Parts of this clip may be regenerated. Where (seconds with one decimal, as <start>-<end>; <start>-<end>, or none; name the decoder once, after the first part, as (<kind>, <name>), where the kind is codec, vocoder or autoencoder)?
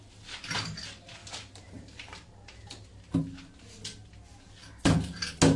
1.2-3.2 (vocoder, BigVGAN v2)